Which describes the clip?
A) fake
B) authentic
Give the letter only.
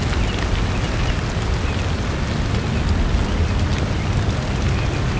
B